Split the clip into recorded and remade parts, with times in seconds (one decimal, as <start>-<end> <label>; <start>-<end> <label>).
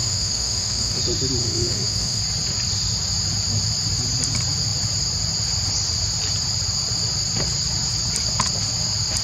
0.0-1.0 remade; 1.0-1.4 recorded; 1.4-2.2 remade; 2.2-9.2 recorded